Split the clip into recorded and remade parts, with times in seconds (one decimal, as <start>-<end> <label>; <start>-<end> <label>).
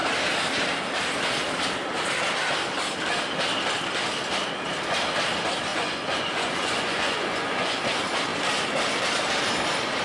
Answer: 0.0-5.7 recorded; 5.7-7.8 remade; 7.8-10.0 recorded